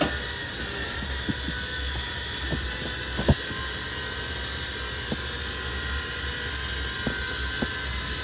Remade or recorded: recorded